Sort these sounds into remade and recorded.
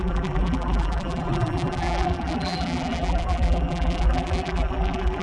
remade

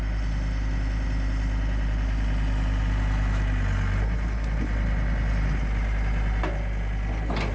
recorded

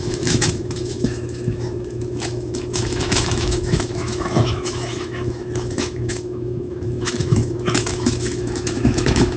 remade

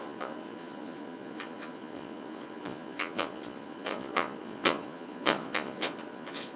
remade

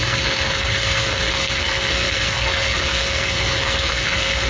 remade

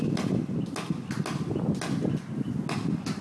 recorded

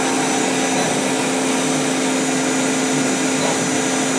recorded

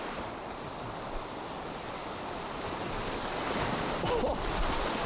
recorded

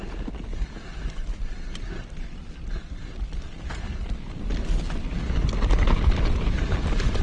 recorded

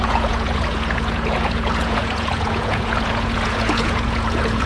remade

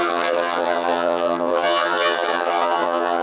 remade